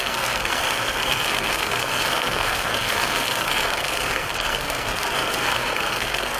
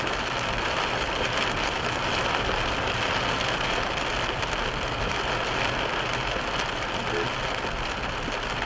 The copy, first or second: first